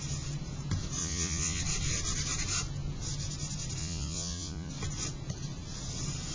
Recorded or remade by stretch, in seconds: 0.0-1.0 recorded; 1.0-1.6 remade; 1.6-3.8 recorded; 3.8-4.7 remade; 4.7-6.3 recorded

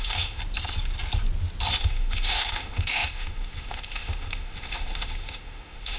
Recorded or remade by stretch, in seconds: 0.0-0.4 remade; 0.4-1.8 recorded; 1.8-6.0 remade

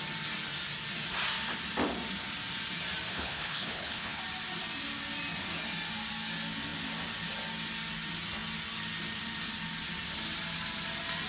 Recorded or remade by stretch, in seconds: 0.0-3.1 recorded; 3.1-4.2 remade; 4.2-11.3 recorded

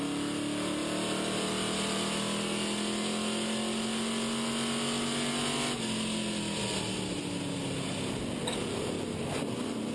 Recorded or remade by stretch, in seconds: 0.0-9.9 recorded

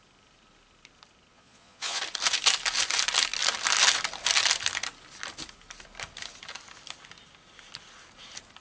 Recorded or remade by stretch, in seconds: 0.0-1.3 recorded; 1.3-2.0 remade; 2.0-8.6 recorded

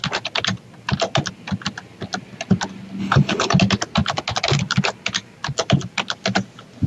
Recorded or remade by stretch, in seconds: 0.0-3.0 recorded; 3.0-3.6 remade; 3.6-6.9 recorded

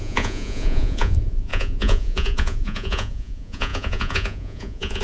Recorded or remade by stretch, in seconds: 0.0-5.0 remade

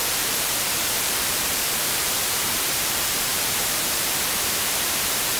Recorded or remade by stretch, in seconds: 0.0-5.4 remade